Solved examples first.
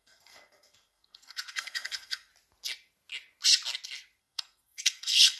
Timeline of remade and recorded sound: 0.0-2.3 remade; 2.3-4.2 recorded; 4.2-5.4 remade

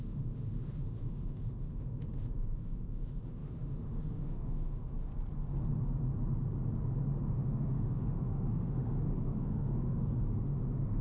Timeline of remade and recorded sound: 0.0-5.1 remade; 5.1-7.3 recorded; 7.3-11.0 remade

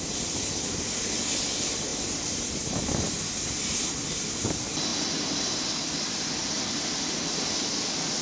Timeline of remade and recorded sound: 0.0-8.2 recorded

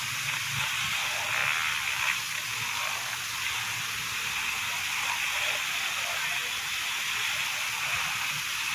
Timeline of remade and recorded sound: 0.0-8.7 recorded

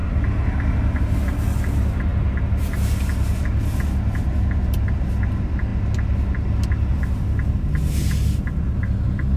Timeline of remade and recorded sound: 0.0-9.4 recorded

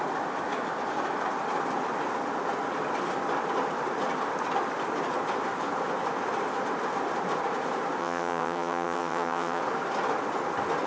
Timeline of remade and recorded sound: 0.0-8.0 recorded; 8.0-9.6 remade; 9.6-10.9 recorded

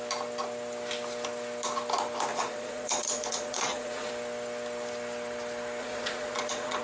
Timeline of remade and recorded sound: 0.0-2.3 recorded; 2.3-4.1 remade; 4.1-5.8 recorded; 5.8-6.8 remade

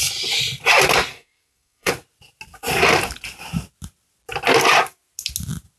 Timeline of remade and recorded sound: 0.0-1.1 recorded; 1.1-1.9 remade; 1.9-5.8 recorded